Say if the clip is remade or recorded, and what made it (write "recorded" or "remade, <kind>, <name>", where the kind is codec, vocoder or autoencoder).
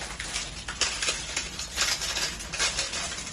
recorded